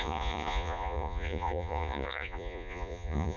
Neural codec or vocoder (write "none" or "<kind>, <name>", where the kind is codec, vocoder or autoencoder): vocoder, Vocos